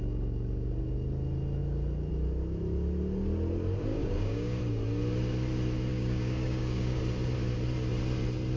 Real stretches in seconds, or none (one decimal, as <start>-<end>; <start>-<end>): 0.0-3.9; 4.6-5.9; 7.0-8.6

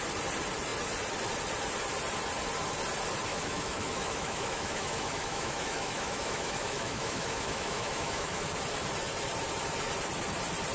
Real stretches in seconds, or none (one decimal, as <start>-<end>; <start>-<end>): 0.0-3.3; 8.5-10.7